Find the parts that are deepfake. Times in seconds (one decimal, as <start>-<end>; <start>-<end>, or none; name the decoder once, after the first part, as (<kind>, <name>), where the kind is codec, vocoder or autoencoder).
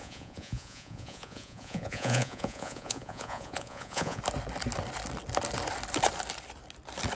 0.0-4.2 (vocoder, Vocos)